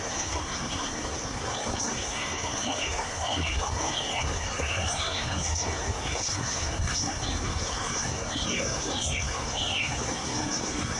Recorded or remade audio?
remade